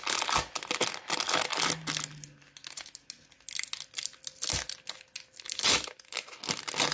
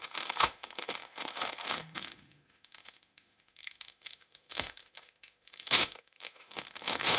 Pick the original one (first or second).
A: first